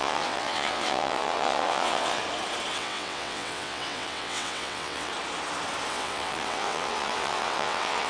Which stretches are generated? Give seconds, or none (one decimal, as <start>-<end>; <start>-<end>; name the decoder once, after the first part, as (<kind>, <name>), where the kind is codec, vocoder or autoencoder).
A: 0.0-2.2 (vocoder, WaveNeXt); 2.7-5.1; 5.9-8.1